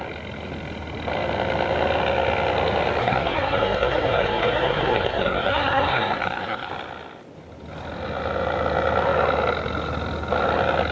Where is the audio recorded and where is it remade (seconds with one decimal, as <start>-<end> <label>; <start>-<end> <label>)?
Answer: 0.0-3.0 recorded; 3.0-6.7 remade; 6.7-10.9 recorded